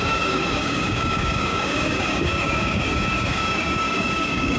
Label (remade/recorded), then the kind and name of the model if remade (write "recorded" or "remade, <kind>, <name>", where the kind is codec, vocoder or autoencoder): remade, codec, DAC